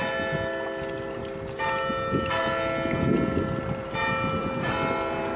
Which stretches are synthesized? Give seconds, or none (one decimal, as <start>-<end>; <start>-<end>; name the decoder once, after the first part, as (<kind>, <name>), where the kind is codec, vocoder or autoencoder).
none